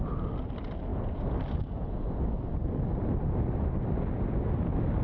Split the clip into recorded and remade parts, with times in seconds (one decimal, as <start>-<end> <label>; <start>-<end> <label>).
0.0-5.0 recorded